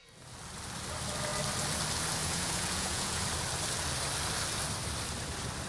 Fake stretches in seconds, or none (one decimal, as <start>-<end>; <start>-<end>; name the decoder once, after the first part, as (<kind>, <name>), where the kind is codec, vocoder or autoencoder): 2.2-3.2 (vocoder, Vocos)